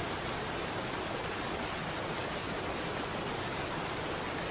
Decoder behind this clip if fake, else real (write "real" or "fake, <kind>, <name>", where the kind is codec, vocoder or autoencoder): real